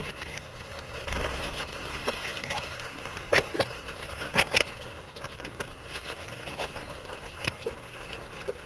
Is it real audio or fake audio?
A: fake